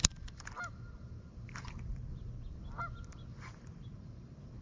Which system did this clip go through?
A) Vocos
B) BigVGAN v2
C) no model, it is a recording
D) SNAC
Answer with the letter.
B